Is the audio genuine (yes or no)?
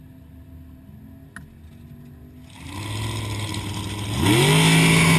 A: yes